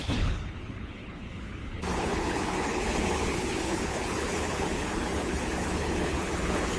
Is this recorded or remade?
remade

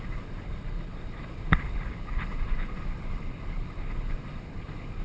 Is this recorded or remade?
remade